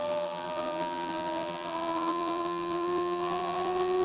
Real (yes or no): no